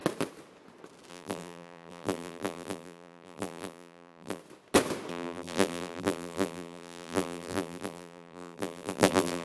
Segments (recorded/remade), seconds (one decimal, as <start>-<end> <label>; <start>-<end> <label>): 0.0-1.1 recorded; 1.1-4.4 remade; 4.4-5.1 recorded; 5.1-9.4 remade